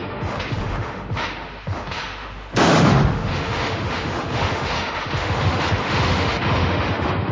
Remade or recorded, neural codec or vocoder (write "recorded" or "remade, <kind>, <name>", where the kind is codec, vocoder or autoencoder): remade, autoencoder, DAC-VAE